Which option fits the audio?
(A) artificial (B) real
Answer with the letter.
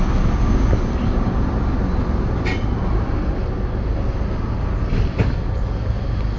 B